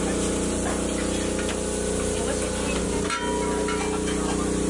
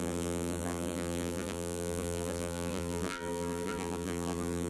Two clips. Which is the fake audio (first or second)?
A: second